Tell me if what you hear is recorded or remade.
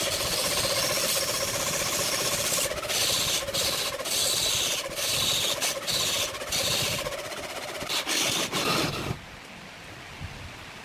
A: recorded